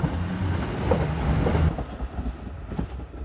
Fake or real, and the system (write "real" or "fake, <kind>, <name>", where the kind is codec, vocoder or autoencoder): real